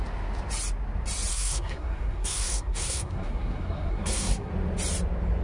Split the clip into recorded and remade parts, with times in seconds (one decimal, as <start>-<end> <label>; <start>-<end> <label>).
0.0-1.3 recorded; 1.3-4.5 remade; 4.5-5.4 recorded